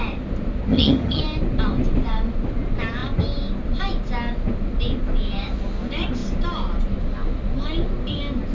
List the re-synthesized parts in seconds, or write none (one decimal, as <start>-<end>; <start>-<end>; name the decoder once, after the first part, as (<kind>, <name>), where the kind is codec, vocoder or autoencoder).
0.7-1.2 (vocoder, HiFi-GAN)